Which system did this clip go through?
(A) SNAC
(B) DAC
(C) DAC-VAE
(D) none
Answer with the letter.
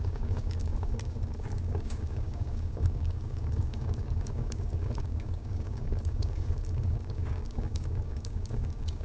B